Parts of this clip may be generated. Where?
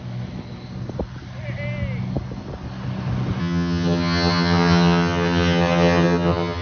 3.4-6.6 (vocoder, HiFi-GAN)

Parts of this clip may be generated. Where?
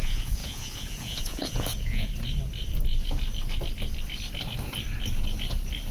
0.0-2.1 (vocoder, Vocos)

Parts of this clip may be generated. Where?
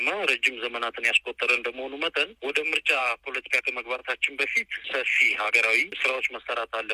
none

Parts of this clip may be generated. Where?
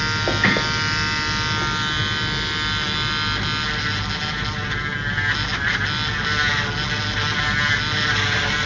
none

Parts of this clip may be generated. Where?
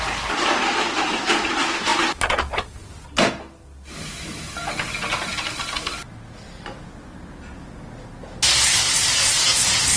none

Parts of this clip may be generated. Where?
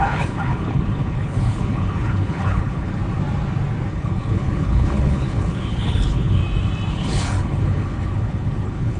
0.0-3.0 (codec, HILCodec); 3.9-6.4; 6.9-9.0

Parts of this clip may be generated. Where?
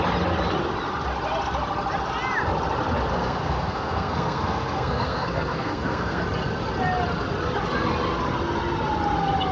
3.1-6.2 (codec, SNAC)